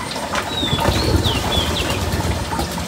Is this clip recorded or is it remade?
recorded